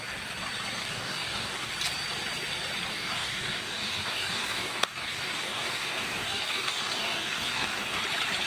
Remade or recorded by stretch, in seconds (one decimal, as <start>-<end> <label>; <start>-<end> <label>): 0.0-0.8 recorded; 0.8-1.7 remade; 1.7-2.9 recorded; 2.9-8.0 remade; 8.0-8.5 recorded